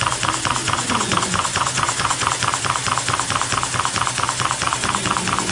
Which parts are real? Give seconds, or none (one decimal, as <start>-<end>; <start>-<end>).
0.0-0.6; 2.3-5.5